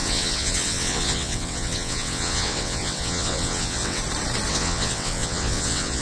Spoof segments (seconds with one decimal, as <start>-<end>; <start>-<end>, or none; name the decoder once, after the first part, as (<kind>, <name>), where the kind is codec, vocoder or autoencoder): 0.0-4.0 (vocoder, WaveNeXt); 4.5-6.0